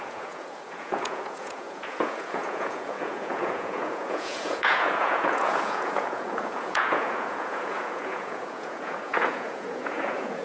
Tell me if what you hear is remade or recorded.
remade